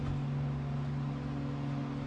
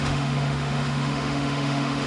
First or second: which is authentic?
first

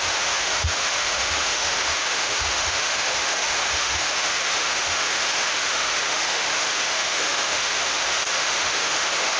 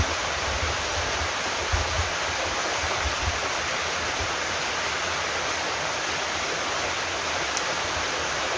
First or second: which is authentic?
second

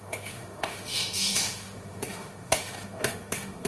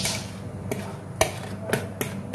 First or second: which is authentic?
second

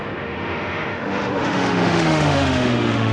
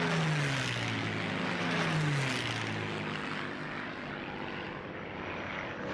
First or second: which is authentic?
second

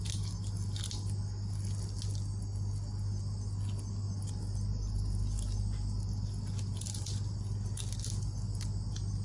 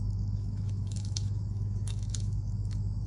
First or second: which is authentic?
first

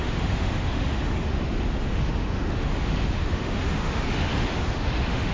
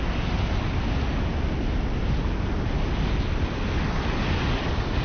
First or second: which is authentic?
second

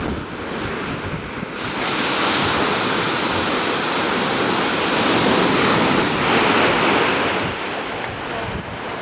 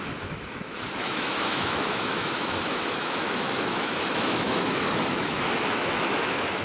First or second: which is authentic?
first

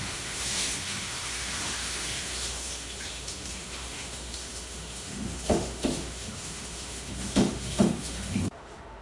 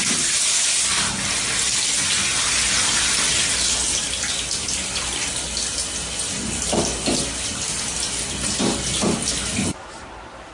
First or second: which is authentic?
second